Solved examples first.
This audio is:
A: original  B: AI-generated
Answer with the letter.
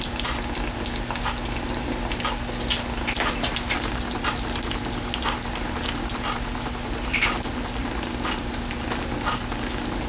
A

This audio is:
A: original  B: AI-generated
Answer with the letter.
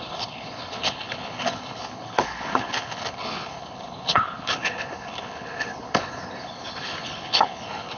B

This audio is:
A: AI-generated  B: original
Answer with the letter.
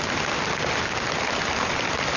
B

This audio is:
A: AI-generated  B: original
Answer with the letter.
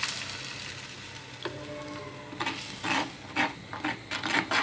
B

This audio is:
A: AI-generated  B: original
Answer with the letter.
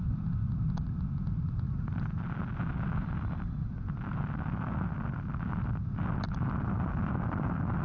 B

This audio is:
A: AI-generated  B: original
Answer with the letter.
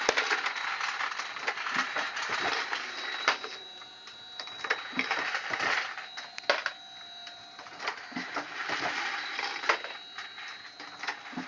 B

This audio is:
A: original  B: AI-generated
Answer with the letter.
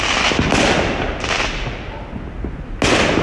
A